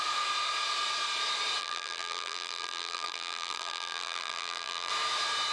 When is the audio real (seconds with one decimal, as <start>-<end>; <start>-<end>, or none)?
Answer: 0.0-1.6; 4.9-5.5